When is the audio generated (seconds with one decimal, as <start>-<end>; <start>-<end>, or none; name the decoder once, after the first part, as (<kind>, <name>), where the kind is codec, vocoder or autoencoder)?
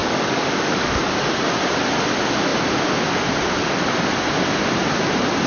0.0-1.0 (codec, DAC)